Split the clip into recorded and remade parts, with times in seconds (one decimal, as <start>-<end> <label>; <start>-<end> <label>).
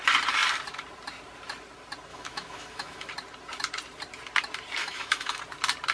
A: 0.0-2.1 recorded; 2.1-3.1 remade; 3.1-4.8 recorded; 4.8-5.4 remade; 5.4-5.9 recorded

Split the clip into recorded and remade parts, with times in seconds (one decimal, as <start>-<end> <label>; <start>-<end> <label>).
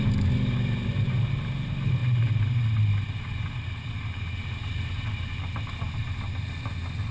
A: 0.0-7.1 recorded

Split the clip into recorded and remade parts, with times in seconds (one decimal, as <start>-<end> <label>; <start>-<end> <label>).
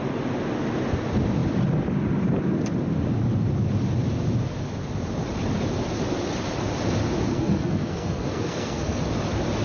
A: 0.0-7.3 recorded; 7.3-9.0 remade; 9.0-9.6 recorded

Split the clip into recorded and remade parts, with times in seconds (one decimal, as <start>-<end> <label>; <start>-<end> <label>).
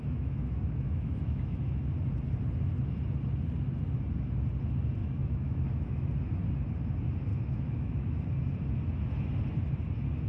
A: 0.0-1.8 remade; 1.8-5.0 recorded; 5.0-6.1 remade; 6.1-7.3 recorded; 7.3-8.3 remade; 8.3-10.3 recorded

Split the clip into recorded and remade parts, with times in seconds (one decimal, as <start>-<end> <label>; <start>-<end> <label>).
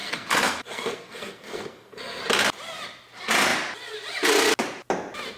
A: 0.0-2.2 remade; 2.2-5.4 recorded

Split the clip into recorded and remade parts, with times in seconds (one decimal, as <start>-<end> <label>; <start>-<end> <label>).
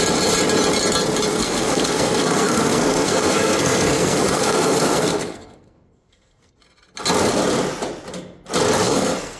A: 0.0-1.3 recorded; 1.3-6.5 remade; 6.5-8.8 recorded; 8.8-9.4 remade